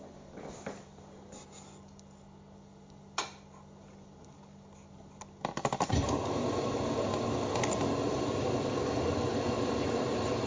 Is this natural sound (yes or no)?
yes